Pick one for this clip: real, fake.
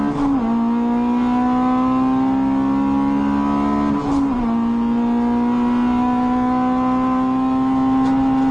real